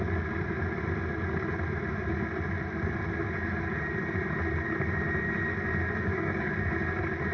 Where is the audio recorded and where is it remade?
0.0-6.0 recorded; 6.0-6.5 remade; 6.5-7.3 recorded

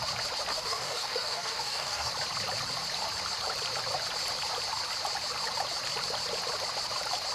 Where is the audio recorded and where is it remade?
0.0-0.5 recorded; 0.5-2.1 remade; 2.1-7.3 recorded

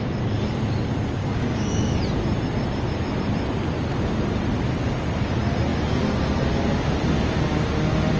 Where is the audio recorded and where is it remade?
0.0-1.2 recorded; 1.2-2.0 remade; 2.0-8.2 recorded